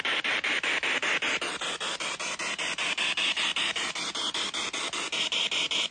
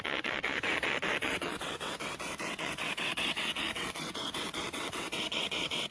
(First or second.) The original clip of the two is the first